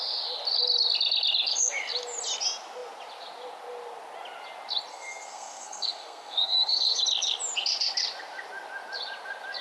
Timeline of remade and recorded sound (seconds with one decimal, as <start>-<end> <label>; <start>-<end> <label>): 0.0-4.9 recorded; 4.9-7.0 remade; 7.0-9.6 recorded